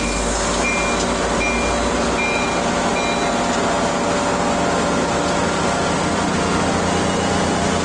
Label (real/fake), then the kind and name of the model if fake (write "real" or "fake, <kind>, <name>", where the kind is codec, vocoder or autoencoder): real